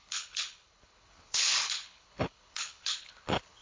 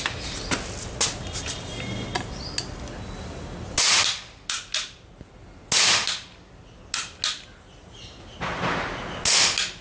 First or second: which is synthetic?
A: first